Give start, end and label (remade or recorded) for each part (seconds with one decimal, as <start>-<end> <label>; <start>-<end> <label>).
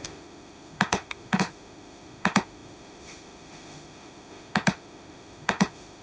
0.0-6.0 remade